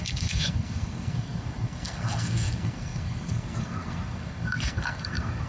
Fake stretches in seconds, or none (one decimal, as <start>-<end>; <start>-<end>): 0.0-5.5